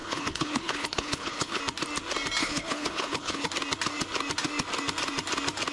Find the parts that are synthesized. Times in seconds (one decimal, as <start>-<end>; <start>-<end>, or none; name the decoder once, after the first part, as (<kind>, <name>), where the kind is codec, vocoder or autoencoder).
0.0-1.6 (codec, HILCodec); 2.4-3.5